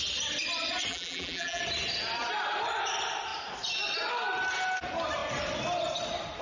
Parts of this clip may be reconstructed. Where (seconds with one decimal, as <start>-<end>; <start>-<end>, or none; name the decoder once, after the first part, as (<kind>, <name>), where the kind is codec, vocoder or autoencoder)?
0.9-1.6 (vocoder, BigVGAN v2)